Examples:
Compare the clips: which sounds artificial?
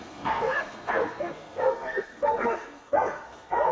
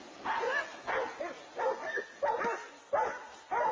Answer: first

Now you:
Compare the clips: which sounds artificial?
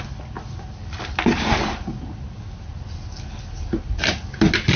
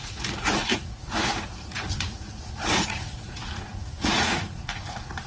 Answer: second